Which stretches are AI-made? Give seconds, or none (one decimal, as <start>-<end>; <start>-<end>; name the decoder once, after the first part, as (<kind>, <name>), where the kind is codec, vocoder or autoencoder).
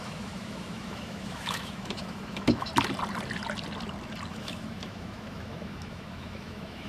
0.0-2.7 (autoencoder, DAC-VAE); 4.3-6.9